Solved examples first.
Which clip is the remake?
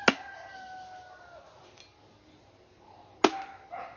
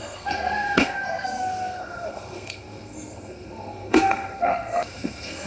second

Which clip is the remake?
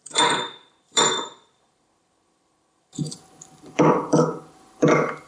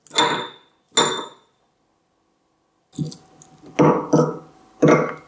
first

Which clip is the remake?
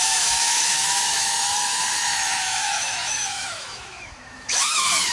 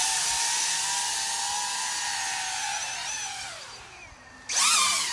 first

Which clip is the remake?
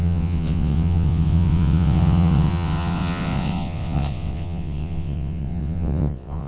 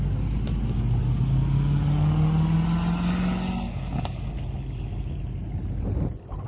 first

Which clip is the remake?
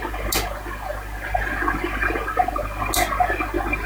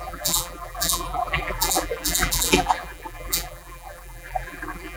second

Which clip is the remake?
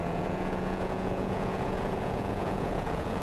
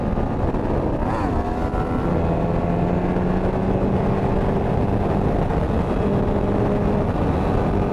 first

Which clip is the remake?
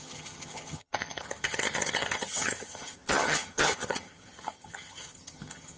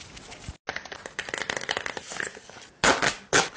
first